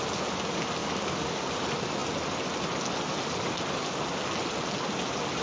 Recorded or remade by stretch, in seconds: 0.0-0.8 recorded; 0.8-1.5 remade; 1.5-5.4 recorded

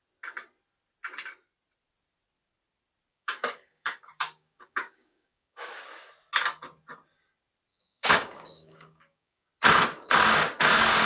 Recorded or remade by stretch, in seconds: 0.0-3.1 recorded; 3.1-6.1 remade; 6.1-7.7 recorded; 7.7-9.5 remade; 9.5-9.9 recorded; 9.9-11.1 remade

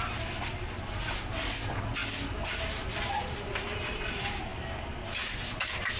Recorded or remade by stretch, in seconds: 0.0-6.0 recorded